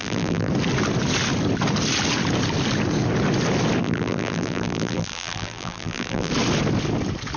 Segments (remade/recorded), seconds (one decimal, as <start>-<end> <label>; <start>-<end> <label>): 0.0-0.5 remade; 0.5-3.8 recorded; 3.8-6.3 remade; 6.3-7.4 recorded

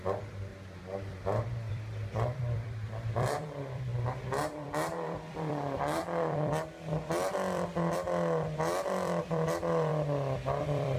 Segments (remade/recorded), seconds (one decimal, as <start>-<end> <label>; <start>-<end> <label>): 0.0-0.5 remade; 0.5-1.7 recorded; 1.7-9.9 remade; 9.9-10.6 recorded; 10.6-11.0 remade

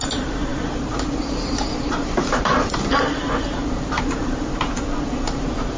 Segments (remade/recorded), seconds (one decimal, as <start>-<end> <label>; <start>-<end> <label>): 0.0-5.8 remade